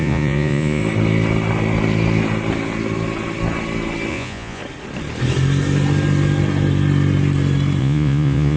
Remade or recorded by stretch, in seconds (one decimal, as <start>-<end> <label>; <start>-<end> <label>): 0.0-0.8 remade; 0.8-4.1 recorded; 4.1-4.6 remade; 4.6-7.8 recorded; 7.8-8.6 remade